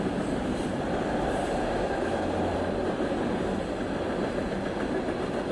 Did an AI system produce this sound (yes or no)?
no